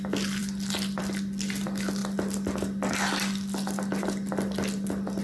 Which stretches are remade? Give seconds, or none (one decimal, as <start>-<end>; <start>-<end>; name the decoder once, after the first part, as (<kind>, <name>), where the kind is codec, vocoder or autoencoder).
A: none